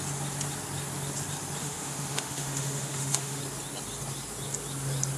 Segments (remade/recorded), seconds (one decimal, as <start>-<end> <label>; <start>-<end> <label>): 0.0-1.6 recorded; 1.6-3.4 remade; 3.4-5.2 recorded